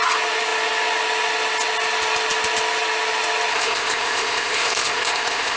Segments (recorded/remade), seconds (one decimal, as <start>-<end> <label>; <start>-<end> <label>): 0.0-3.5 recorded; 3.5-5.6 remade